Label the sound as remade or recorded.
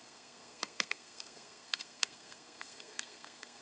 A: remade